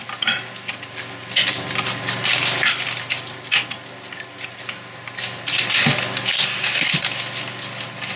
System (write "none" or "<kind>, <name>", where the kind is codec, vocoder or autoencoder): none